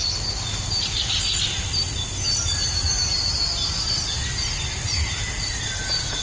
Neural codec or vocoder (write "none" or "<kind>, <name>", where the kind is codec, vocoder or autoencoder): none